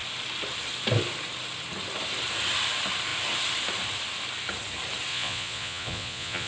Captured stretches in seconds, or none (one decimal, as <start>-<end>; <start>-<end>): 0.0-5.1